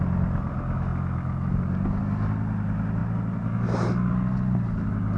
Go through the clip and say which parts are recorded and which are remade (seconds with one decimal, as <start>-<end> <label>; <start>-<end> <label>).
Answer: 0.0-5.2 recorded